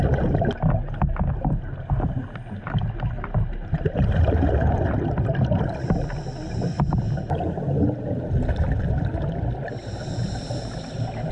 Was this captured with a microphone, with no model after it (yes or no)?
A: yes